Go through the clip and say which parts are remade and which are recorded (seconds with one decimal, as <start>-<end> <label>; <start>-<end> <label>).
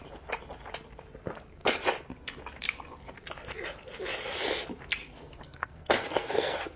0.0-5.0 recorded; 5.0-6.8 remade